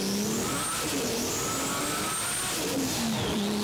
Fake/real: real